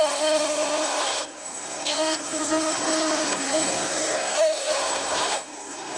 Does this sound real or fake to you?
fake